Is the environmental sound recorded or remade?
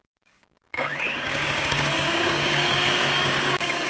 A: remade